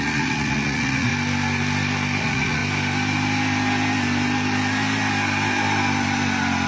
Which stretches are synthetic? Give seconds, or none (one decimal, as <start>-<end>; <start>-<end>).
0.0-1.1; 2.2-2.6

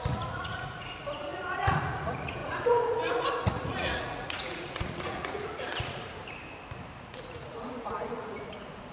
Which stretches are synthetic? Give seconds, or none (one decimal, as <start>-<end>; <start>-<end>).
0.0-6.2; 7.0-8.9

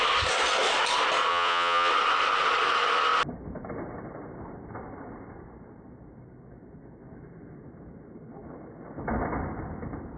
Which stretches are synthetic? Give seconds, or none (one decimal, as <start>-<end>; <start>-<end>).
1.3-1.9

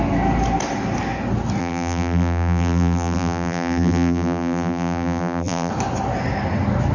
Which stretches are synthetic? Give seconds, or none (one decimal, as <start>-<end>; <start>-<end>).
1.6-5.7